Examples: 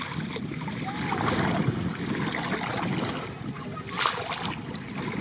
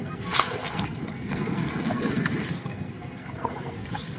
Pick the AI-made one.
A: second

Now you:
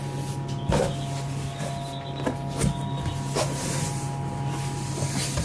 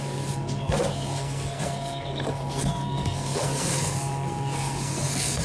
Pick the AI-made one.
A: second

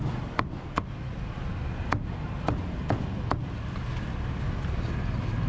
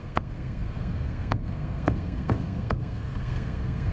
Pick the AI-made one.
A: second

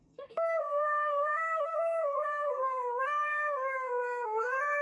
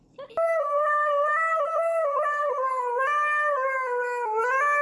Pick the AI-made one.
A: first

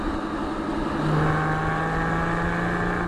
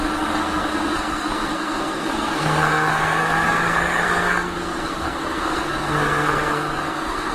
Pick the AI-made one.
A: second